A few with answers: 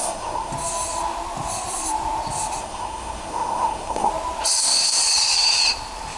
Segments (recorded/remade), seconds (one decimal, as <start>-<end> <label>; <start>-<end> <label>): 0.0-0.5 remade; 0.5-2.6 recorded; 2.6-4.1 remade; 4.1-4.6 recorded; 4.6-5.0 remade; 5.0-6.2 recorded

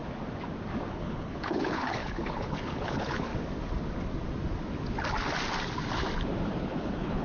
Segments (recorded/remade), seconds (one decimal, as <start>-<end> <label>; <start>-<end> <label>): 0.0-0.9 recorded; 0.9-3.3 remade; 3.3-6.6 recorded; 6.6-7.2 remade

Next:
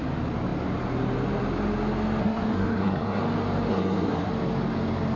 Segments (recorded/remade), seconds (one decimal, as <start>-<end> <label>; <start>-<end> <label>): 0.0-2.2 recorded; 2.2-3.2 remade; 3.2-3.7 recorded; 3.7-4.3 remade; 4.3-5.2 recorded